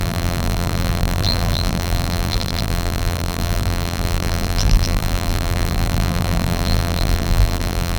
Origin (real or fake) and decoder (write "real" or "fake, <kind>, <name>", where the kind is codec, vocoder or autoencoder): fake, vocoder, BigVGAN v2